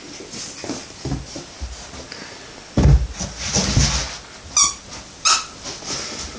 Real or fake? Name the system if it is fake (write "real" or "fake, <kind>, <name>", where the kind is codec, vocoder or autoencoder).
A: real